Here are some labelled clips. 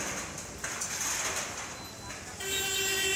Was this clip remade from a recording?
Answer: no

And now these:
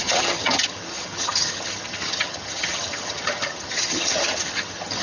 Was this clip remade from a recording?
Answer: yes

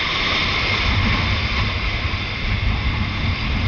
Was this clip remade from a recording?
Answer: no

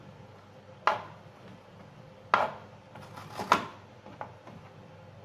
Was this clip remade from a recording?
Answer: no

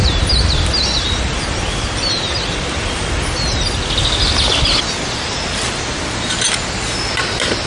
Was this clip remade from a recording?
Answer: no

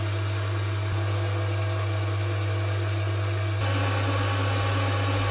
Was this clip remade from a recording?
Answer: no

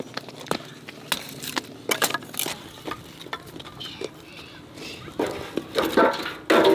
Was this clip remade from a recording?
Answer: no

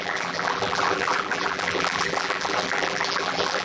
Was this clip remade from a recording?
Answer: yes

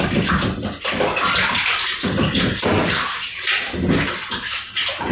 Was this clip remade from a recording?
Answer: no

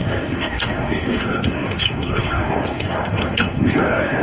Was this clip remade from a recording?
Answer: yes